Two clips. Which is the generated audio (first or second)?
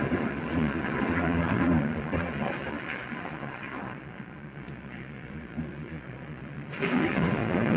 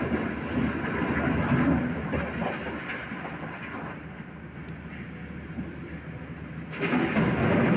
first